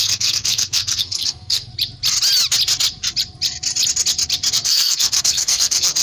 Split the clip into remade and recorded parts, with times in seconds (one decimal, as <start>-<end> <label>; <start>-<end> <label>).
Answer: 0.0-1.7 remade; 1.7-4.5 recorded; 4.5-6.0 remade